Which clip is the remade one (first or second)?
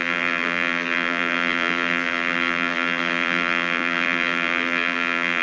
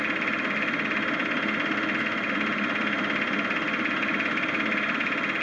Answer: first